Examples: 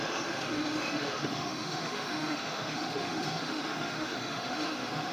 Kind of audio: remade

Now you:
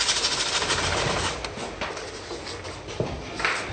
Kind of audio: recorded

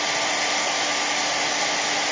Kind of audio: recorded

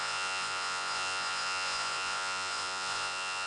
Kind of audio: remade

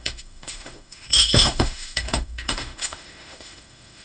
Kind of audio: remade